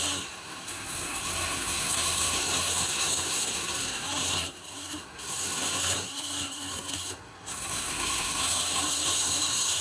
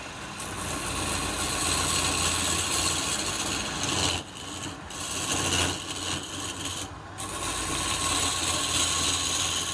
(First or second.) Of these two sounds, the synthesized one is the first